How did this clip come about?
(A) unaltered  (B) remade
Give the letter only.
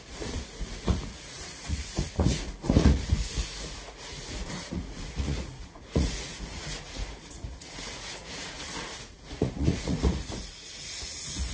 B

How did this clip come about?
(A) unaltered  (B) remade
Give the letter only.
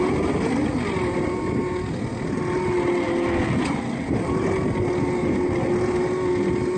A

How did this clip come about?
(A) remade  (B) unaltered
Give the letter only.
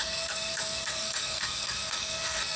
A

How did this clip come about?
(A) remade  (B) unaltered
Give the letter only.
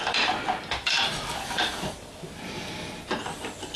B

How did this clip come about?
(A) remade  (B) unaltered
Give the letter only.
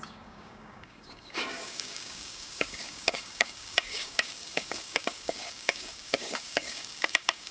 A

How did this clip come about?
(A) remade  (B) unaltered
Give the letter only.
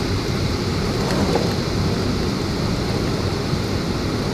B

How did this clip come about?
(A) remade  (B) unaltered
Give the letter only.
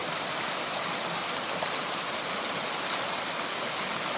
B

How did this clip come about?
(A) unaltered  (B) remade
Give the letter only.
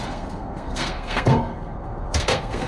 B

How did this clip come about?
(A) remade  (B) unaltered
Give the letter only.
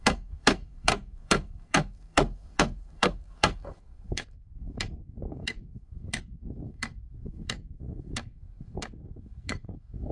A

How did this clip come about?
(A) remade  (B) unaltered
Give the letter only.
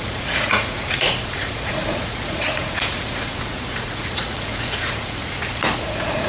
A